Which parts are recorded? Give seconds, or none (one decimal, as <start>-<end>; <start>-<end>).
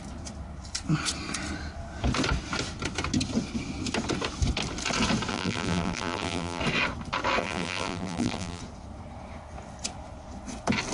0.0-5.3; 6.6-7.4; 8.6-10.9